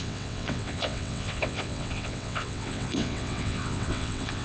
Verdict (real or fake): fake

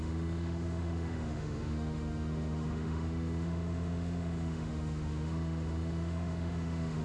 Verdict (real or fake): fake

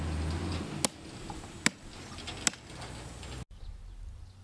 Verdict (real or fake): real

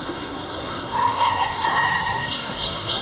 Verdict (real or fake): fake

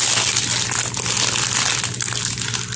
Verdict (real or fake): real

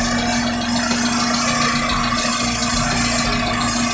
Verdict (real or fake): real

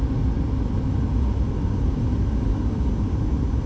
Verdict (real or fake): real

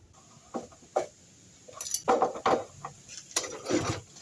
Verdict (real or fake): real